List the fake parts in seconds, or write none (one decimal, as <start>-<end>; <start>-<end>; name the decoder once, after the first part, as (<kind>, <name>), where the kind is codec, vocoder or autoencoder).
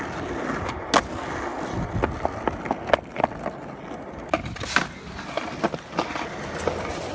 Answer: none